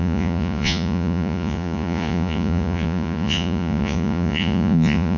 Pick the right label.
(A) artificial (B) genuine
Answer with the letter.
A